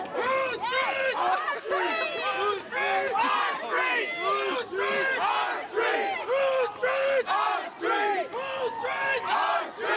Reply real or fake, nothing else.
real